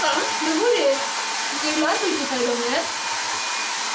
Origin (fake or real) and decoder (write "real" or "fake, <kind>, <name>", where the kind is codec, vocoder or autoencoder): real